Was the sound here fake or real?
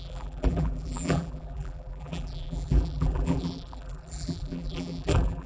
fake